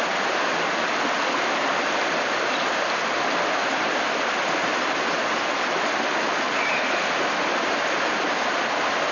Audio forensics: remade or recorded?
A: recorded